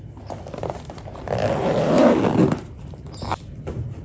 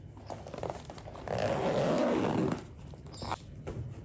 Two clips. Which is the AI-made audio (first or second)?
first